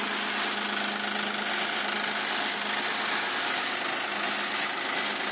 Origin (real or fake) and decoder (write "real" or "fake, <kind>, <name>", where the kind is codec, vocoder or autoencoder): real